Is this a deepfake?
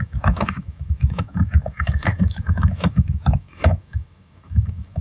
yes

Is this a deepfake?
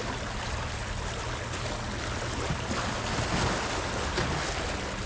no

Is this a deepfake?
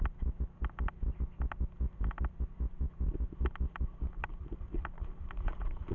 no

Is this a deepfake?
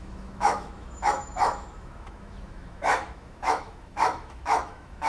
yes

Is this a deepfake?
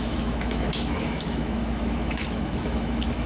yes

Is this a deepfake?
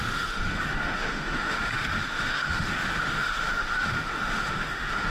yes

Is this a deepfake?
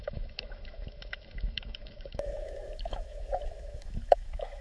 yes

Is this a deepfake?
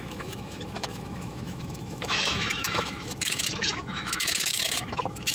yes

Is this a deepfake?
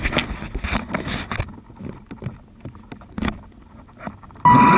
no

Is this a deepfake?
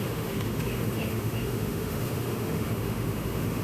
yes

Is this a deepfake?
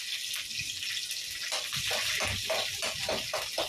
no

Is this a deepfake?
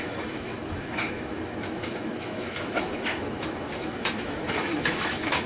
yes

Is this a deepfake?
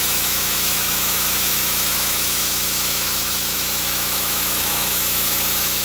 yes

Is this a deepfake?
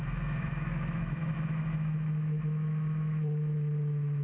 yes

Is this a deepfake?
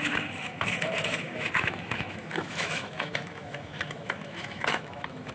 yes